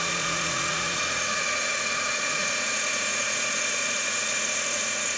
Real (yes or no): no